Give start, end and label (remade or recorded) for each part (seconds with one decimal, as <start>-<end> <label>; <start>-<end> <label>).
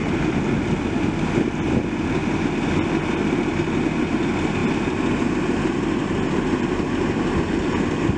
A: 0.0-8.2 recorded